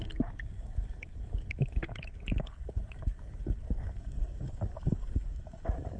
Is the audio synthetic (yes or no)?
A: yes